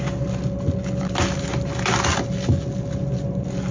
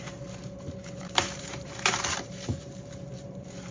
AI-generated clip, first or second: second